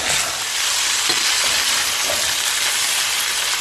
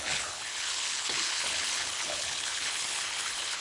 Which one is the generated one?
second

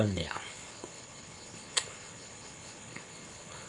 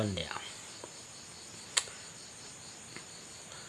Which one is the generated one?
first